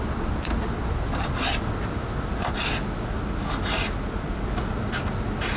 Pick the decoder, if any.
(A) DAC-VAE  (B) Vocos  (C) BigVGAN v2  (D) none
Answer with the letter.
D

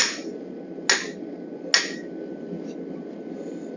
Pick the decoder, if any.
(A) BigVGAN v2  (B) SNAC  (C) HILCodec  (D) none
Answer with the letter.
D